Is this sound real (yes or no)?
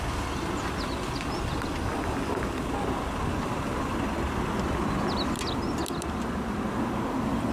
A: yes